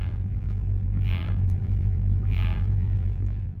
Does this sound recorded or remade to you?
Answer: remade